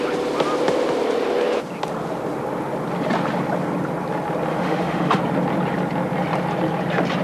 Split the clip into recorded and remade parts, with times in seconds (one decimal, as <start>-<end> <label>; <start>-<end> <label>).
0.0-4.5 recorded; 4.5-5.2 remade; 5.2-7.2 recorded